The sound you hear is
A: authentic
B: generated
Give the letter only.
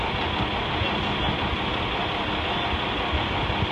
A